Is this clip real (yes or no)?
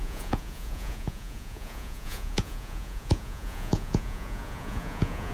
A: no